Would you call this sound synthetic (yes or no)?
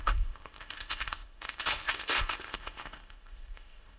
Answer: yes